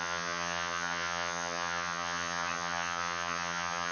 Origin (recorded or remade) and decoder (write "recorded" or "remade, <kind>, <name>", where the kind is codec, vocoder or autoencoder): remade, vocoder, HiFi-GAN